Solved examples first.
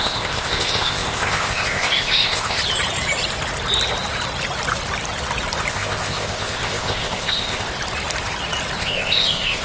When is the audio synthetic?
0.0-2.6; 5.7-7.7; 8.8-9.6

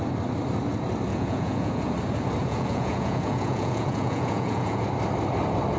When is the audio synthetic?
1.1-1.9; 2.4-4.8

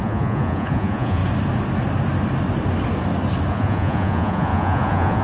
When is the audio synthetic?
0.0-1.2; 3.5-5.2

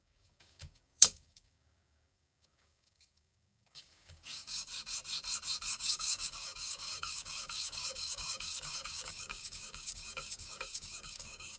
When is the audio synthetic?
0.0-4.7; 5.7-11.6

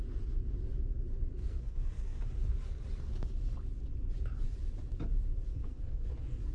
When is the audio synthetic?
1.3-2.3; 5.5-6.1

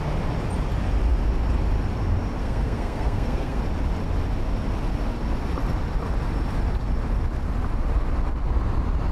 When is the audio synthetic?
2.4-3.6

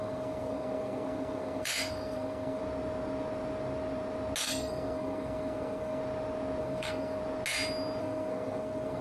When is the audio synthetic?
0.0-2.6; 4.4-6.0; 6.6-7.2; 8.0-9.0

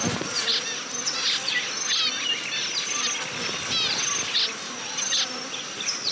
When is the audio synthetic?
none